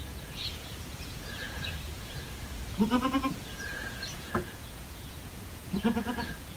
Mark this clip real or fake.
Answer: fake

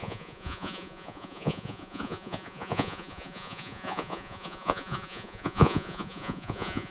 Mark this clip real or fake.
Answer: fake